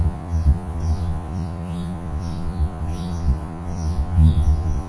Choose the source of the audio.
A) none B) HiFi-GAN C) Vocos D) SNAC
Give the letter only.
C